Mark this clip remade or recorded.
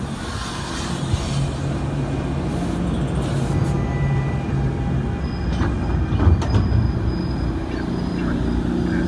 recorded